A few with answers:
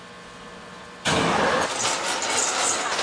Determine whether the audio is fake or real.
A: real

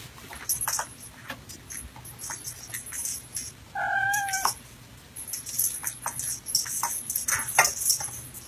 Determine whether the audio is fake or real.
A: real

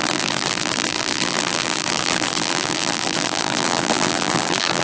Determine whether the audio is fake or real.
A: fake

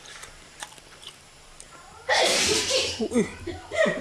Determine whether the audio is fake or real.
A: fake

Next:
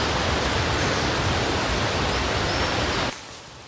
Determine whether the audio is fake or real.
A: real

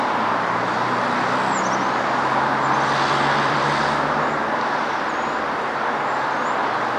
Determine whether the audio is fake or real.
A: fake